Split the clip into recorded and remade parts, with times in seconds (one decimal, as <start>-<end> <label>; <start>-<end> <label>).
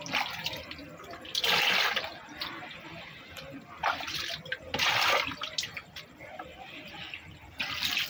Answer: 0.0-8.1 recorded